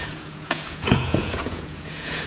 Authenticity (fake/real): fake